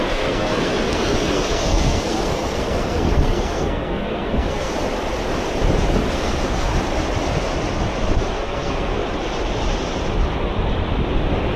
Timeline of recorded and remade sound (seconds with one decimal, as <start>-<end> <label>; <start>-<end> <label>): 0.0-4.7 remade; 4.7-6.1 recorded; 6.1-6.7 remade; 6.7-8.3 recorded; 8.3-9.0 remade; 9.0-11.6 recorded